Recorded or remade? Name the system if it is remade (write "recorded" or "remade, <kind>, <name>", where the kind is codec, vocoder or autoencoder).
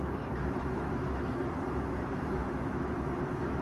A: remade, autoencoder, DAC-VAE